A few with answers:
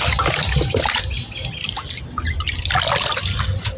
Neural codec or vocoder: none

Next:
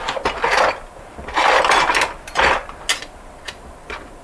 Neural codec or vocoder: none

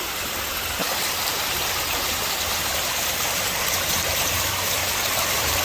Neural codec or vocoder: vocoder, BigVGAN v2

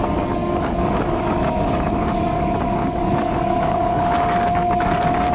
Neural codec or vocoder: codec, DAC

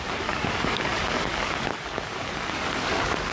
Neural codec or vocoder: codec, DAC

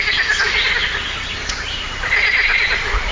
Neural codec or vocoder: none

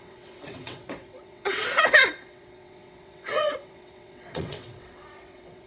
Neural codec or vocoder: vocoder, WaveNeXt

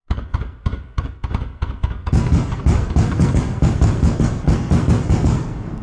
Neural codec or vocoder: codec, SNAC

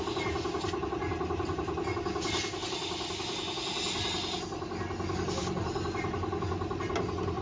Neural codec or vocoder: none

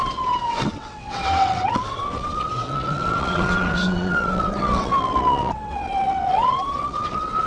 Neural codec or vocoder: vocoder, WaveNeXt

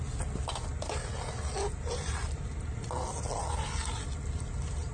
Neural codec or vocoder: none